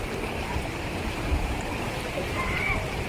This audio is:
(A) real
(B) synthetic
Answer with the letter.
B